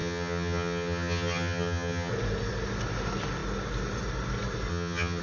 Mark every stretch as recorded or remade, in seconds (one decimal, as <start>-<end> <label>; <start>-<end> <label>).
0.0-2.1 remade; 2.1-4.7 recorded; 4.7-5.2 remade